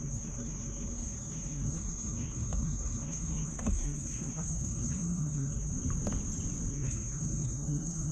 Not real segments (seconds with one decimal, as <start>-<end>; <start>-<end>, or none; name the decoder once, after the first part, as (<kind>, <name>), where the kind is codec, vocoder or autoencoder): 0.0-5.7 (codec, SNAC); 6.7-8.1